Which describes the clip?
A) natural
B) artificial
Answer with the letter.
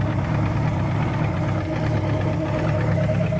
A